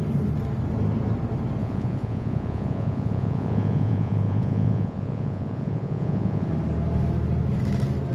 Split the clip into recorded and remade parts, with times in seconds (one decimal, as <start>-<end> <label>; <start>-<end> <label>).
0.0-1.6 recorded; 1.6-6.5 remade; 6.5-8.1 recorded